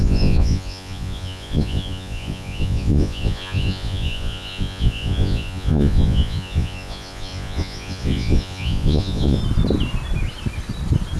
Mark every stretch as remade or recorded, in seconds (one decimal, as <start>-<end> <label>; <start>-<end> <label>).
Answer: 0.0-9.4 remade; 9.4-11.2 recorded